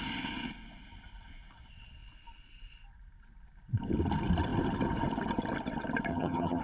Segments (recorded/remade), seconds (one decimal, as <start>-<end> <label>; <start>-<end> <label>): 0.0-6.1 recorded; 6.1-6.6 remade